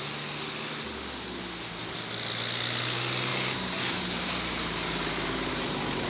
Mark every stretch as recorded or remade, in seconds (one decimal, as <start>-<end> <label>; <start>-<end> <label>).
0.0-3.3 recorded; 3.3-6.1 remade